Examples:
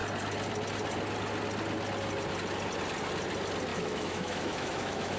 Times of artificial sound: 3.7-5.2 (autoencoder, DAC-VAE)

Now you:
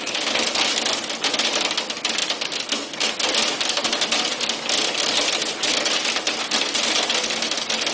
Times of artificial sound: none

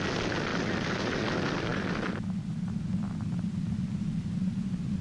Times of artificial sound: 0.5-1.1 (vocoder, BigVGAN v2)

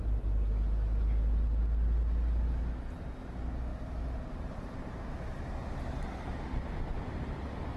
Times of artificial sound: none